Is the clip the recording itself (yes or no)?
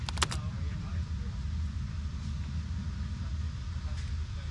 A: yes